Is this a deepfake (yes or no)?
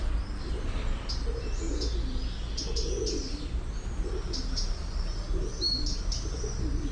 no